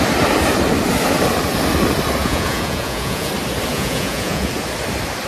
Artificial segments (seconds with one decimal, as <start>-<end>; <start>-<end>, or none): 2.2-3.3; 3.7-4.5